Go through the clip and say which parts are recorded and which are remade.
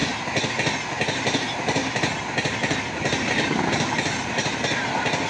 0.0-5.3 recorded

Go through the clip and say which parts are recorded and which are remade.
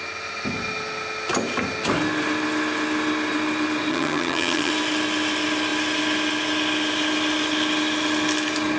0.0-3.9 recorded; 3.9-4.7 remade; 4.7-8.8 recorded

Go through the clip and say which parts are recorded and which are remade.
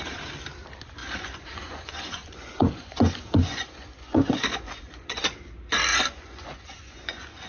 0.0-1.0 recorded; 1.0-5.2 remade; 5.2-5.9 recorded; 5.9-7.5 remade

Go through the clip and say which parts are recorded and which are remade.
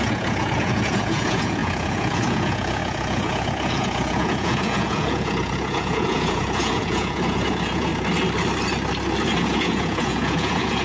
0.0-7.9 remade; 7.9-9.4 recorded; 9.4-10.8 remade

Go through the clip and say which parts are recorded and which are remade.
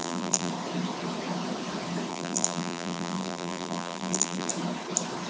0.0-0.5 remade; 0.5-2.1 recorded; 2.1-4.5 remade; 4.5-5.3 recorded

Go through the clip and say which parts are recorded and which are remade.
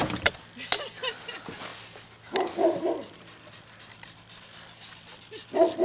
0.0-5.8 recorded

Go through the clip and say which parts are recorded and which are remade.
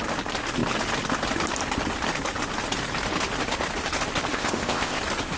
0.0-4.3 recorded; 4.3-5.0 remade; 5.0-5.4 recorded